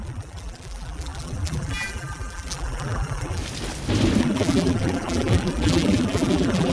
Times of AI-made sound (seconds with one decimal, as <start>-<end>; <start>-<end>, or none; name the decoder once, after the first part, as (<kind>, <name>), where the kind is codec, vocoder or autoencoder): 0.0-3.4 (vocoder, BigVGAN v2); 4.2-6.7